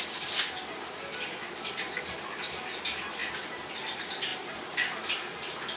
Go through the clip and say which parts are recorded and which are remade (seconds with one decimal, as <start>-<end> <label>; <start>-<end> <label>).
0.0-5.8 recorded